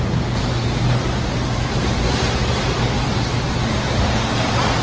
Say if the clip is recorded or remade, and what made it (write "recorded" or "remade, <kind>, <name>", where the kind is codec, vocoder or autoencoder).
recorded